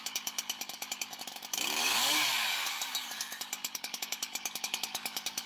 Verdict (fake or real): fake